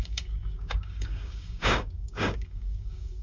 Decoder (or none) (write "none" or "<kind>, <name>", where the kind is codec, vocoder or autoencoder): codec, DAC